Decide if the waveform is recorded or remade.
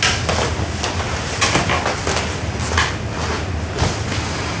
recorded